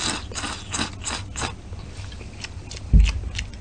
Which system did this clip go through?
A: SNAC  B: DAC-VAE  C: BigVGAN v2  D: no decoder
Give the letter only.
D